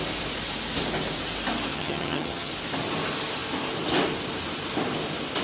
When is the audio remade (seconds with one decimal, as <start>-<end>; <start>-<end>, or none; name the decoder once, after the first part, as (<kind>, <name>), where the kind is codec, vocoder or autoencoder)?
1.7-2.5 (vocoder, HiFi-GAN)